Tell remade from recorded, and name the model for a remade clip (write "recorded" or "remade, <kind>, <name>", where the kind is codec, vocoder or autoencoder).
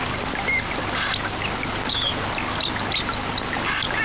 recorded